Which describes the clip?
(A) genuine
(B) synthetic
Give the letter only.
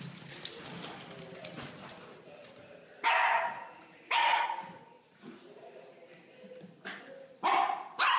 A